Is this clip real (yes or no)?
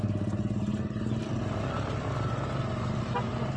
yes